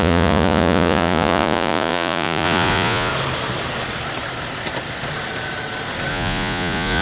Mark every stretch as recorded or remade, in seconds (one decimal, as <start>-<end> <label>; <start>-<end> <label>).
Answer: 0.0-3.1 remade; 3.1-6.1 recorded; 6.1-7.0 remade

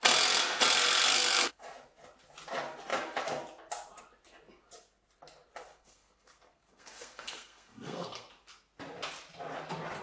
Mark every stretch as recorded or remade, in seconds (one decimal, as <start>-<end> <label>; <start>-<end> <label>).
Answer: 0.0-1.1 recorded; 1.1-1.6 remade; 1.6-5.7 recorded; 5.7-8.3 remade; 8.3-10.0 recorded

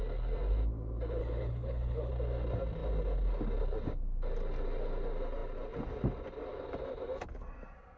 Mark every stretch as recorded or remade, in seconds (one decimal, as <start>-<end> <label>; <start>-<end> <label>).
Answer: 0.0-1.2 recorded; 1.2-2.1 remade; 2.1-8.0 recorded

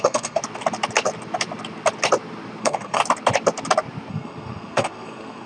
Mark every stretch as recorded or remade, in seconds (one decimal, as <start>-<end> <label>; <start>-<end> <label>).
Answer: 0.0-0.4 remade; 0.4-2.6 recorded; 2.6-3.0 remade; 3.0-4.1 recorded; 4.1-5.5 remade